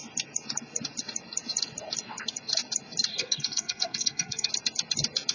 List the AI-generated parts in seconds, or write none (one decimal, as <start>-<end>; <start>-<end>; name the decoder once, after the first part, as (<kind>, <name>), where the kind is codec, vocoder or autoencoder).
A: 3.1-4.5 (codec, SNAC)